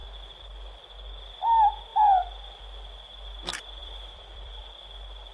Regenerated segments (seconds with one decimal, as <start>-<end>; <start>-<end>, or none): 1.9-2.6; 3.8-4.6